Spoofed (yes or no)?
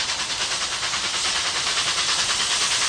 no